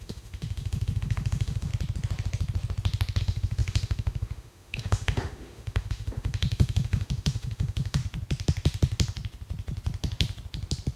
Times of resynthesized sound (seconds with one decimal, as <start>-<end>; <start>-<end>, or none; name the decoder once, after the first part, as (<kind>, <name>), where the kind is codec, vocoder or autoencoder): 0.0-1.7 (autoencoder, DAC-VAE); 3.2-8.0